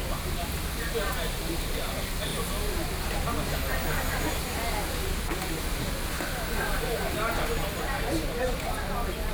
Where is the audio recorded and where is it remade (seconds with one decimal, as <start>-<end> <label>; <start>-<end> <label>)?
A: 0.0-9.3 recorded